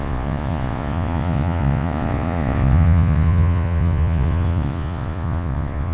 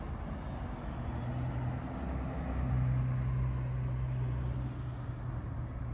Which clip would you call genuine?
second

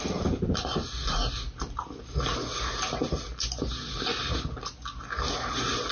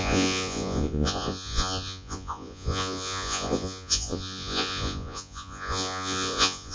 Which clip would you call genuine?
first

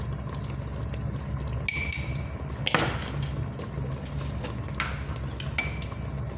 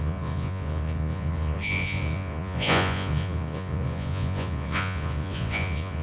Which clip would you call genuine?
first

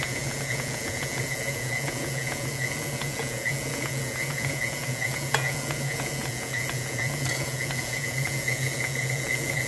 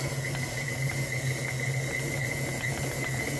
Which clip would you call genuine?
second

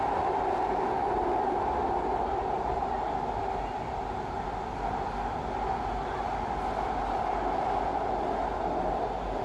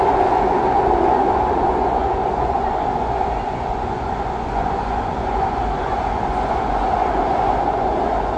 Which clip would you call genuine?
first